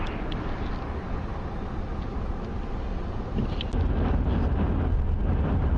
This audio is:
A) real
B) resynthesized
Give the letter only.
A